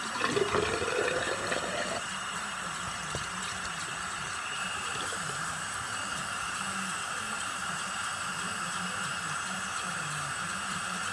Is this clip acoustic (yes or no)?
no